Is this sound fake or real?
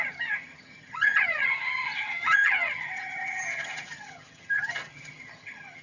fake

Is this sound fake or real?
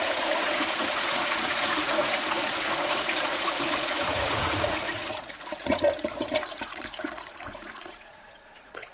fake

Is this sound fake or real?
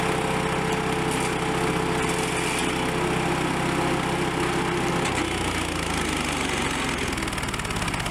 real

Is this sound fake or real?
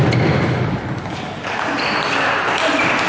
real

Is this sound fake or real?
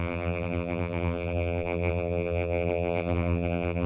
fake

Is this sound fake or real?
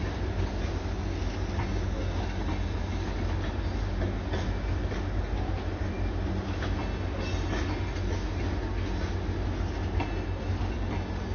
real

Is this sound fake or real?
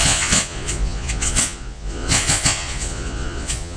fake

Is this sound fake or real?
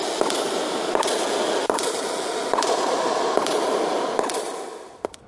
real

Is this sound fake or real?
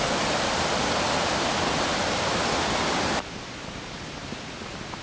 real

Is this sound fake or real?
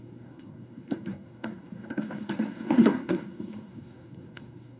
fake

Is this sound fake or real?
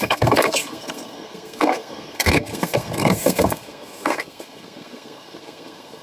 fake